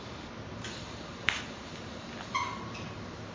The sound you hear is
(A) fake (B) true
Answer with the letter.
A